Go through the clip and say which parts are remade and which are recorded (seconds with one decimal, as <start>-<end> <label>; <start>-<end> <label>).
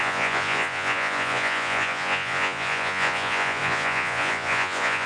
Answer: 0.0-5.1 remade